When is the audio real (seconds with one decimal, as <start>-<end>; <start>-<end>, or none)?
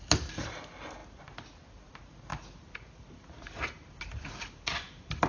0.0-5.3